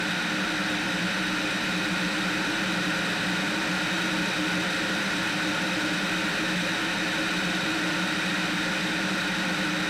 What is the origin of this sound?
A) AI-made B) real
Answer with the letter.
B